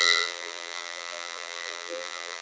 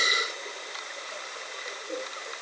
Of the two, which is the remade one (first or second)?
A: first